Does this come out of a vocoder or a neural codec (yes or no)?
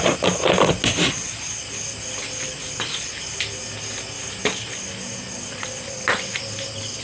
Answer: no